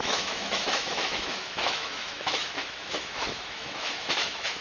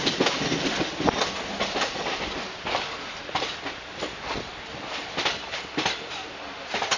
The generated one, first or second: first